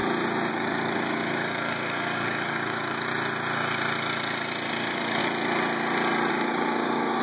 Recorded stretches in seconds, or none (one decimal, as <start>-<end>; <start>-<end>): 0.0-0.5; 3.1-4.7; 5.2-6.3